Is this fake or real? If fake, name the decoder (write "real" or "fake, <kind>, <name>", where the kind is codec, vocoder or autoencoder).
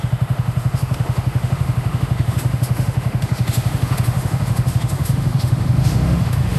fake, autoencoder, DAC-VAE